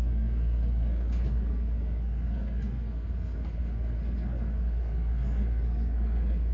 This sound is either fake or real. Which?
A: fake